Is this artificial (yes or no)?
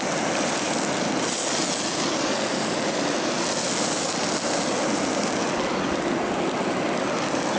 no